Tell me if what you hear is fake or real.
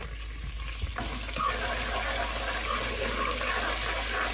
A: real